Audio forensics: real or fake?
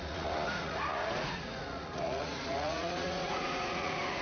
fake